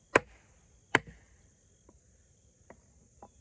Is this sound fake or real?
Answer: real